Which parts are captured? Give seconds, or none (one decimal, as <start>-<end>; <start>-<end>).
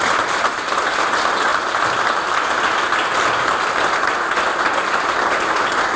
0.0-6.0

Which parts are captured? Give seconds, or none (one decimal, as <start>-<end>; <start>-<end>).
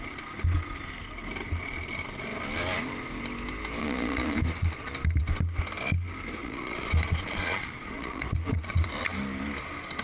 0.0-3.8; 4.9-6.4; 8.9-10.0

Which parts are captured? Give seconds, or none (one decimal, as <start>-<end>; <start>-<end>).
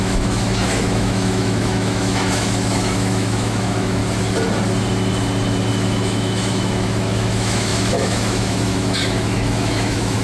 4.0-5.7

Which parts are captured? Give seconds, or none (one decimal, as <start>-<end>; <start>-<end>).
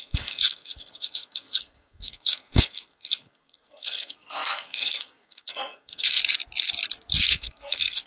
6.2-7.2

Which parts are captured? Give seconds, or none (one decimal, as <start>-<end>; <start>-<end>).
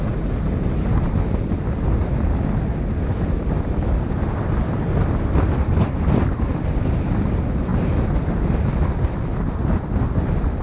0.0-10.6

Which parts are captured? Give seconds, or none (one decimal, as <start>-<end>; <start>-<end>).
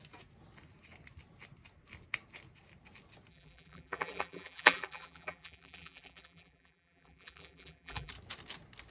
0.0-3.3; 8.1-8.9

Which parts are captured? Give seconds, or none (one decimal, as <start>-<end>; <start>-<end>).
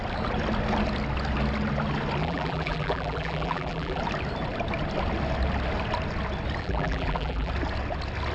0.0-2.2; 4.0-6.6; 7.5-8.3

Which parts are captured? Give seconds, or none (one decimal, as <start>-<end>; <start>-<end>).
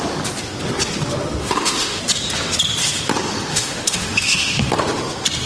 0.0-1.4; 2.0-3.5; 4.7-5.5